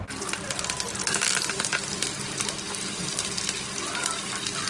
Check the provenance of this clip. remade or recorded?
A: recorded